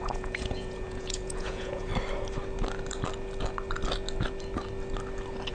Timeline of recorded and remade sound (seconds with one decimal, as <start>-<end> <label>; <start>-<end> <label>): 0.0-1.9 remade; 1.9-5.5 recorded